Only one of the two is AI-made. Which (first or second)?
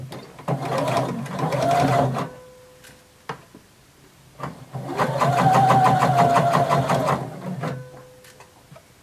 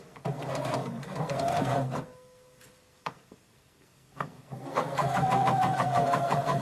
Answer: second